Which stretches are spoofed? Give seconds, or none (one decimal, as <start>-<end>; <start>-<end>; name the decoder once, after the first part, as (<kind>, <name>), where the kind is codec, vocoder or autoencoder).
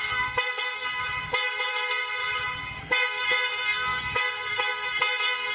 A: 0.0-1.0 (codec, SNAC); 1.7-2.2; 2.8-5.5